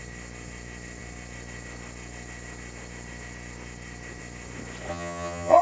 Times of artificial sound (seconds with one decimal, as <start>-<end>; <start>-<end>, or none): 4.9-5.6